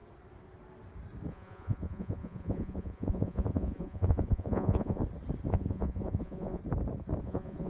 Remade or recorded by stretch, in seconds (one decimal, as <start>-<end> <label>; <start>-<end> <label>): 0.0-1.3 recorded; 1.3-5.0 remade; 5.0-5.5 recorded; 5.5-6.6 remade; 6.6-7.2 recorded; 7.2-7.7 remade